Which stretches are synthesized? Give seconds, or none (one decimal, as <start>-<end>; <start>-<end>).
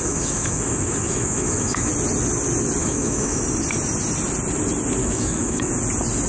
0.0-1.9; 2.8-3.4; 5.0-5.7